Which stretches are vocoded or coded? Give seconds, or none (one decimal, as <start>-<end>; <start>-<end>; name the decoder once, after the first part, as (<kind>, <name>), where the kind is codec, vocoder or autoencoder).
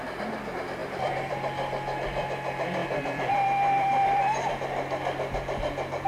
0.8-1.3 (vocoder, BigVGAN v2); 2.8-4.5